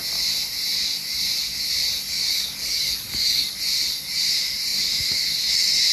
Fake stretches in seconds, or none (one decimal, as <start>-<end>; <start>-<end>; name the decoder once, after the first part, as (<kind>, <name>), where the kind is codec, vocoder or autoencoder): 2.3-3.6 (codec, DAC)